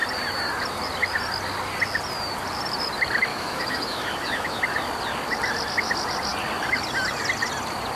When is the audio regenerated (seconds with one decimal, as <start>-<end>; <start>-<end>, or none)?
3.3-4.6